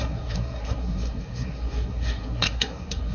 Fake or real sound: fake